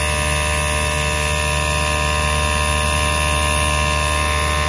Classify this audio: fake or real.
real